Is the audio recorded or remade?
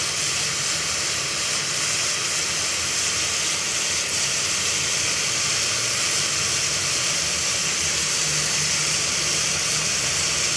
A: recorded